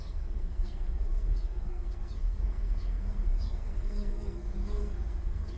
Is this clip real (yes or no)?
no